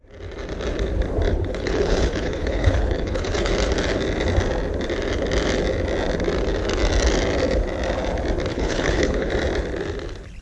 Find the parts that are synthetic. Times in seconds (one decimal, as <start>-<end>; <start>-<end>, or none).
1.3-3.5; 8.5-9.3